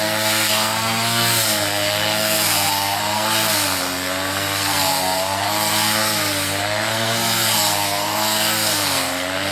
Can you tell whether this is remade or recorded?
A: remade